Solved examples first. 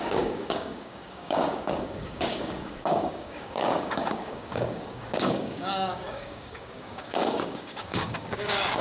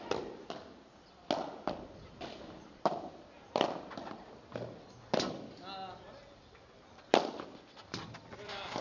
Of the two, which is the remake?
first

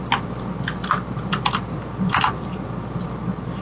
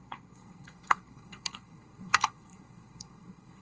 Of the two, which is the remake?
second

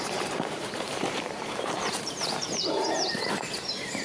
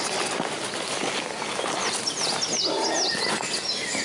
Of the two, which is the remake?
first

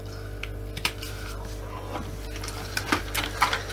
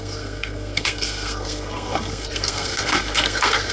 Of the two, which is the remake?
second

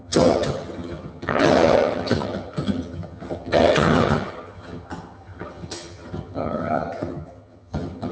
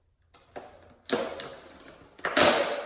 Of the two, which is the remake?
first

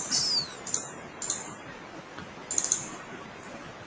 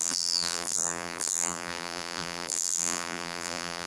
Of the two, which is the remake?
second